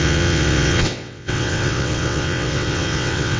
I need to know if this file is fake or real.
fake